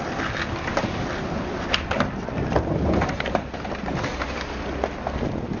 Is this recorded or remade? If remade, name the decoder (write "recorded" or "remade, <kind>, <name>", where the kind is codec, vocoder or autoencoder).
recorded